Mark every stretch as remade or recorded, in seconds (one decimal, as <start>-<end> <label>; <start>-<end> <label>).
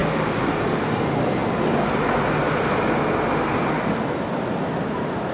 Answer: 0.0-1.4 remade; 1.4-3.4 recorded; 3.4-5.3 remade